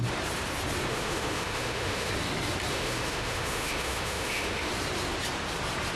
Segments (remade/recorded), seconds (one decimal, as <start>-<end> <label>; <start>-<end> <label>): 0.0-0.9 recorded; 0.9-2.1 remade; 2.1-2.7 recorded; 2.7-4.7 remade; 4.7-6.0 recorded